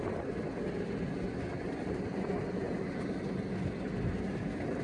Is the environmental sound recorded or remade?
recorded